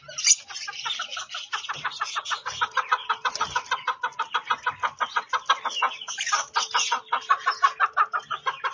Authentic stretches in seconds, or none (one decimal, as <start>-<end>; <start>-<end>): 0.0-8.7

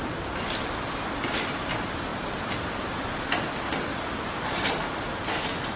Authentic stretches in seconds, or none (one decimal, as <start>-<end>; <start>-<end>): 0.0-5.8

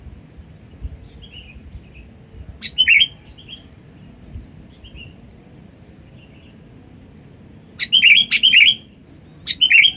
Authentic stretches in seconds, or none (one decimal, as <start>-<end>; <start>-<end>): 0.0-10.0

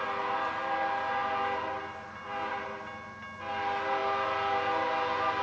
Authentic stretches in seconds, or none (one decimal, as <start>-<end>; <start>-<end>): 0.0-5.4

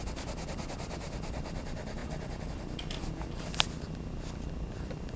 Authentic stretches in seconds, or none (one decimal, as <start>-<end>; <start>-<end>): 0.0-5.2

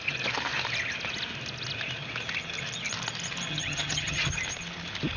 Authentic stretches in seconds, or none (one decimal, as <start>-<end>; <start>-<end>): 0.0-3.5; 4.3-5.2

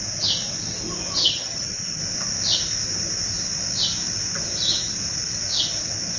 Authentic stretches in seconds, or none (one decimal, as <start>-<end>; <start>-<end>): 0.0-1.2; 2.0-6.2